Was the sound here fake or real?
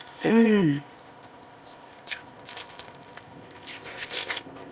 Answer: fake